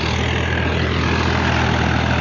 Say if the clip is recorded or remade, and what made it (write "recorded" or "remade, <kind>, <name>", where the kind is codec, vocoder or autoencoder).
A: recorded